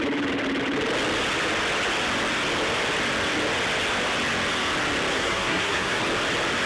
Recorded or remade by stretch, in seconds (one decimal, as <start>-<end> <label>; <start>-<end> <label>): 0.0-5.1 recorded; 5.1-6.0 remade; 6.0-6.7 recorded